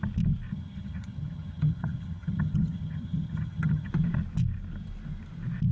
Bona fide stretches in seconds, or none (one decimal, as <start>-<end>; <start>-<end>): 0.0-0.5; 3.9-5.7